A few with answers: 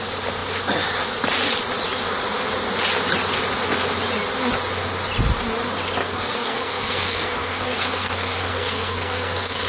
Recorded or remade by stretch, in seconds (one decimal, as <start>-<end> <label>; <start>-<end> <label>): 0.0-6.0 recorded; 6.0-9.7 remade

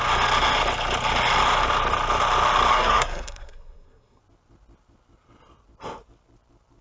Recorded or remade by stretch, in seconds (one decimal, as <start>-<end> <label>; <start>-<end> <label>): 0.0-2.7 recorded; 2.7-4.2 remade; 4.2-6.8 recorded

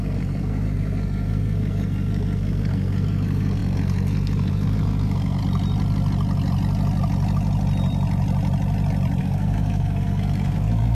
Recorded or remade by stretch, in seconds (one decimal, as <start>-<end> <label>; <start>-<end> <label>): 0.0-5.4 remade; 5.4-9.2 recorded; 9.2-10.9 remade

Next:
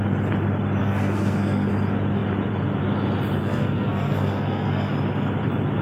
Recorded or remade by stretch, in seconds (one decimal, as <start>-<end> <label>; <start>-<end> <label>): 0.0-0.8 recorded; 0.8-1.7 remade; 1.7-3.4 recorded; 3.4-4.9 remade; 4.9-5.8 recorded

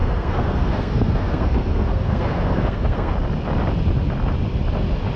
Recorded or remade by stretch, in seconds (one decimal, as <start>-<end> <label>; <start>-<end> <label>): 0.0-3.1 remade; 3.1-5.2 recorded

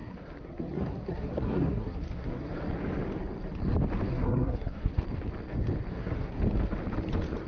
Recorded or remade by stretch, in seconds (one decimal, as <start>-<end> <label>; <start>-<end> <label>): 0.0-2.5 remade; 2.5-4.1 recorded; 4.1-5.0 remade; 5.0-5.9 recorded; 5.9-6.4 remade; 6.4-7.5 recorded